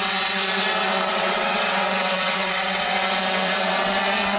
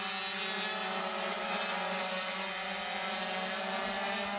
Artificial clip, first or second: first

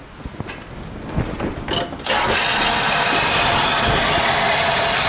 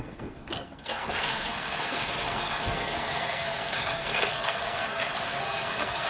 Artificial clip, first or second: second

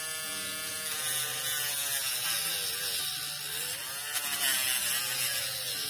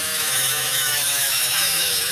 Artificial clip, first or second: second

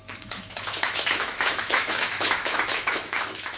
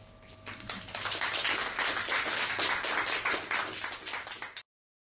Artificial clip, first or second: first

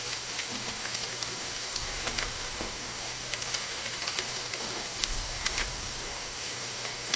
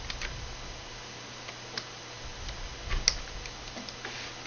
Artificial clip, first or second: first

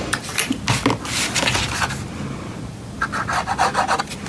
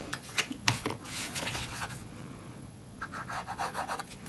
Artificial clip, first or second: second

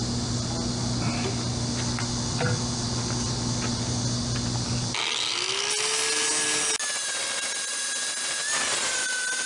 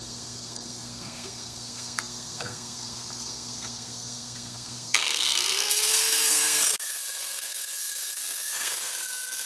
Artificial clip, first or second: second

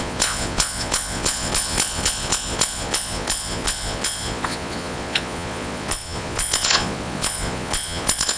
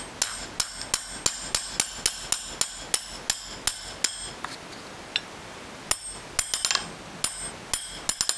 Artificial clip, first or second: first